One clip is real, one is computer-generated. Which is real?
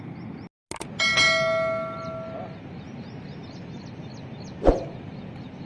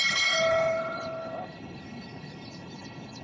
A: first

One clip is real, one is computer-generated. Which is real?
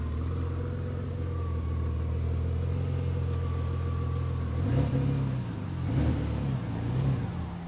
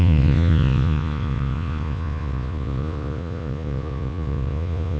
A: first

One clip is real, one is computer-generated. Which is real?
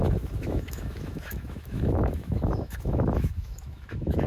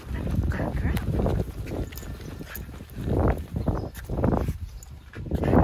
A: second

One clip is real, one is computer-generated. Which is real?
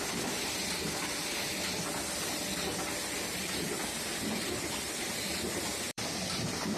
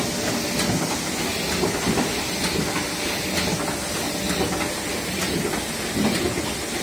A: second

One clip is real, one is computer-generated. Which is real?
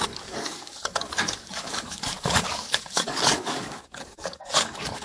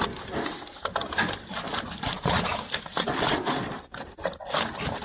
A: second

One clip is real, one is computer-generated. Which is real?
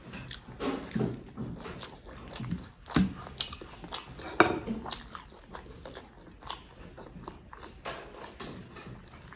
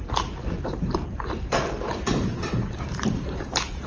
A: first